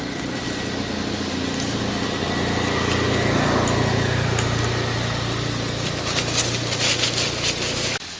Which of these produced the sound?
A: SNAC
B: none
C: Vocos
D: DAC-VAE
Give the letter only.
B